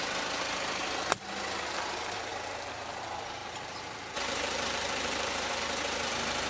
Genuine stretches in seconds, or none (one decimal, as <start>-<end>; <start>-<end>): 0.0-2.3; 3.0-3.4; 5.6-6.5